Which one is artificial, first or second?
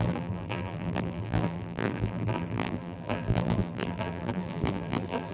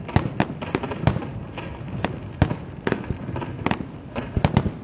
first